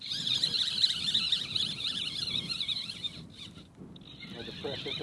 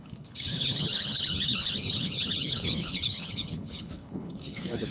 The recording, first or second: first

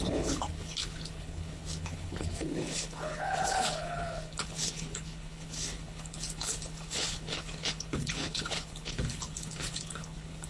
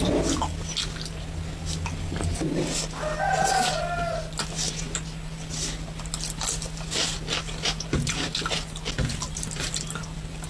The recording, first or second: second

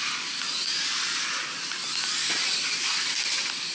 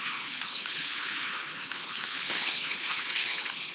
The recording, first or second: first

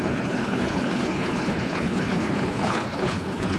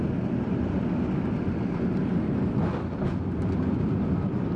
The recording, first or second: second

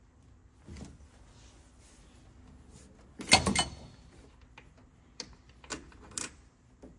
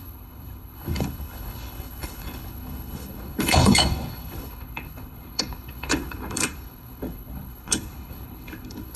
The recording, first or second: first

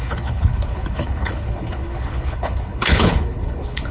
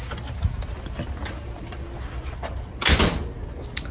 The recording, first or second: second